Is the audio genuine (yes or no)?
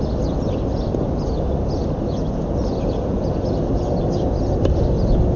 yes